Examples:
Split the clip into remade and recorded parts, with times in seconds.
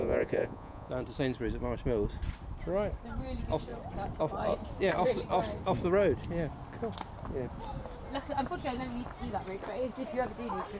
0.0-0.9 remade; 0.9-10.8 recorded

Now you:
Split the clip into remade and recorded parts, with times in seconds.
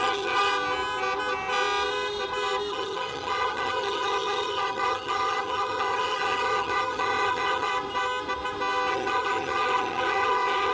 0.0-0.5 remade; 0.5-2.7 recorded; 2.7-7.7 remade; 7.7-8.9 recorded; 8.9-10.7 remade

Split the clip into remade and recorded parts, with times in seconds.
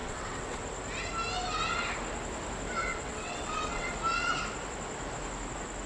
0.0-0.6 remade; 0.6-2.9 recorded; 2.9-3.9 remade; 3.9-5.9 recorded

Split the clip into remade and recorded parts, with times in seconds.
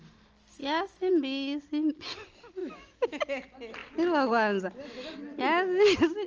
0.0-2.6 recorded; 2.6-3.2 remade; 3.2-6.3 recorded